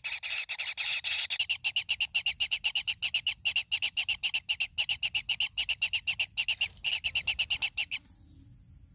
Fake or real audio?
real